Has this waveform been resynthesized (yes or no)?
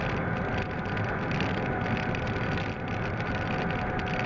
no